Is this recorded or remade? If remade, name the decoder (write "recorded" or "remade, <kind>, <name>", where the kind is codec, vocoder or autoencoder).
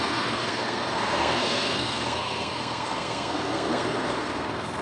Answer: remade, codec, SNAC